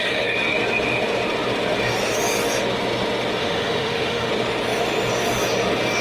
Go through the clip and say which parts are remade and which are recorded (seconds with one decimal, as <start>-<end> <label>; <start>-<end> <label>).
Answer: 0.0-3.4 recorded; 3.4-4.3 remade; 4.3-6.0 recorded